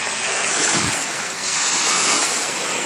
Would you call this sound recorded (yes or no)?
no